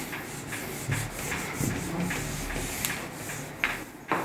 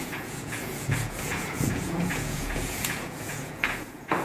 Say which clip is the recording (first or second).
first